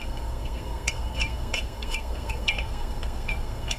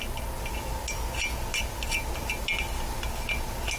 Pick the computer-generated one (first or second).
first